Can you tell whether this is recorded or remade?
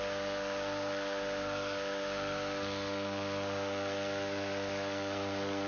remade